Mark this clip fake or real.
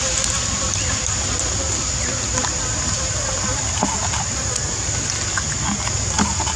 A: real